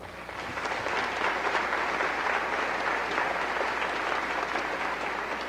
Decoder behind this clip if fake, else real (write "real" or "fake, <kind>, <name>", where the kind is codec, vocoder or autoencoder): real